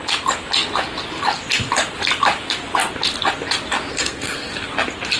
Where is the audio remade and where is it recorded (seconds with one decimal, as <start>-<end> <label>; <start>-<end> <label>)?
0.0-3.9 recorded; 3.9-4.5 remade; 4.5-5.2 recorded